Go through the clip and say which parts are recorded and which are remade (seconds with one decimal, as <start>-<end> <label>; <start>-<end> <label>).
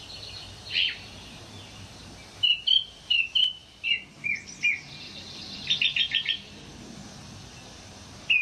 0.0-8.4 recorded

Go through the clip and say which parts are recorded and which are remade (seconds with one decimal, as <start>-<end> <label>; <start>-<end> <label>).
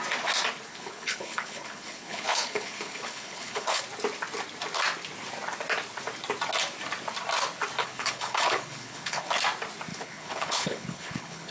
0.0-0.7 recorded; 0.7-3.8 remade; 3.8-7.8 recorded; 7.8-9.3 remade; 9.3-9.9 recorded; 9.9-11.5 remade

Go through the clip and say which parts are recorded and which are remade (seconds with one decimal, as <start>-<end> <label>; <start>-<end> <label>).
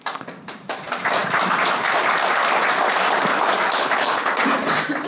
0.0-3.8 recorded; 3.8-4.3 remade; 4.3-5.1 recorded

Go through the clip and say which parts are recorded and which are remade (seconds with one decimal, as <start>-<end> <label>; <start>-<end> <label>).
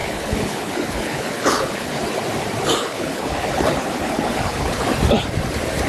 0.0-2.0 remade; 2.0-2.8 recorded; 2.8-4.9 remade; 4.9-5.9 recorded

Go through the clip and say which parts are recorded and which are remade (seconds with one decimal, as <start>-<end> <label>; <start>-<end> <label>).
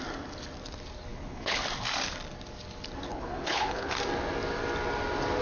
0.0-1.1 recorded; 1.1-1.6 remade; 1.6-3.1 recorded; 3.1-4.0 remade; 4.0-5.4 recorded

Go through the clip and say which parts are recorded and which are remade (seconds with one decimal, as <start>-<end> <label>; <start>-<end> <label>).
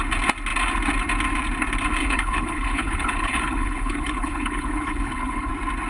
0.0-2.0 recorded; 2.0-5.5 remade; 5.5-5.9 recorded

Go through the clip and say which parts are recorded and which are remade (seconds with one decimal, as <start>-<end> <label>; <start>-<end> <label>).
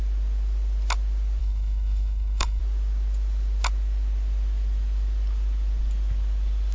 0.0-1.4 recorded; 1.4-2.6 remade; 2.6-6.7 recorded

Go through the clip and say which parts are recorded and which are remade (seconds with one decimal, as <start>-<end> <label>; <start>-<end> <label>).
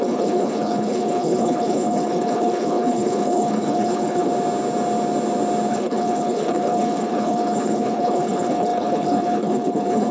0.0-4.3 remade; 4.3-5.7 recorded; 5.7-10.1 remade